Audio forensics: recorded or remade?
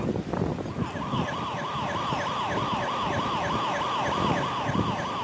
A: recorded